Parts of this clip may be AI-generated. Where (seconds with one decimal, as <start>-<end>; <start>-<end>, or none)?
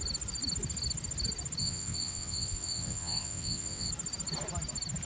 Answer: 1.6-3.9